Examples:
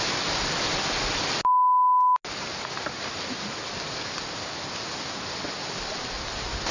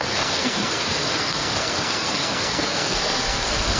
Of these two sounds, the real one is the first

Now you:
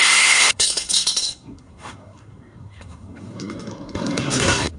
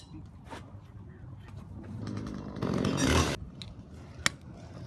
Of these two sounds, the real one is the second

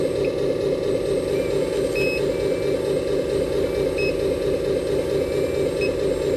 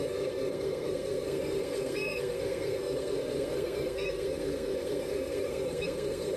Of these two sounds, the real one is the first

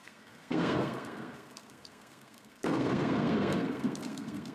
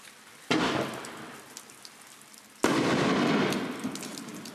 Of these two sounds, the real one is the second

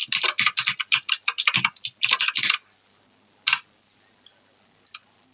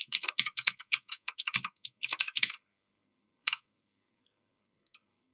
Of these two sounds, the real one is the first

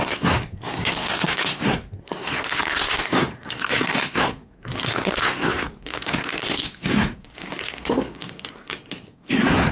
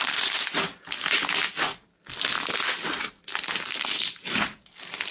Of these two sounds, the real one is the second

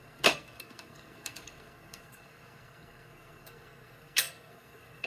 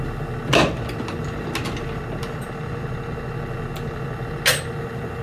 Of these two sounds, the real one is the second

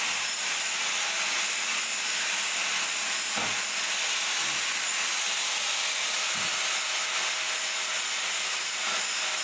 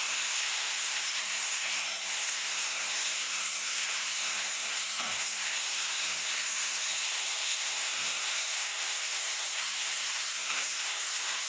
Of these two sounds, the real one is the first